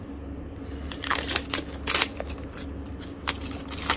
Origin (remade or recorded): recorded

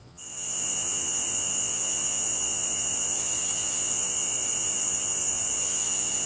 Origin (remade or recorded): remade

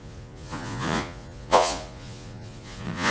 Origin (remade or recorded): remade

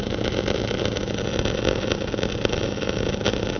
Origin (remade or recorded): recorded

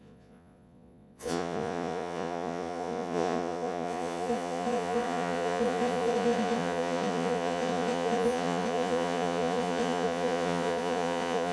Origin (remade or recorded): remade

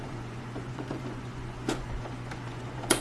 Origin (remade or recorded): remade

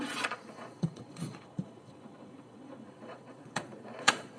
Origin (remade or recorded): remade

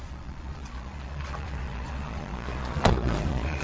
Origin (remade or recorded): remade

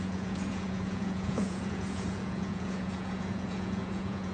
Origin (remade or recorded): remade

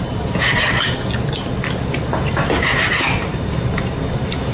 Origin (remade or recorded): recorded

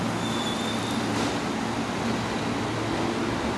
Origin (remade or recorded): recorded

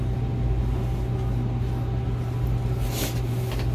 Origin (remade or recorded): recorded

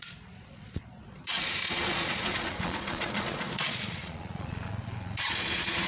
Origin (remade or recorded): remade